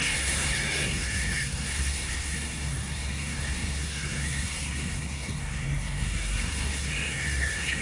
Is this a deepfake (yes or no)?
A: yes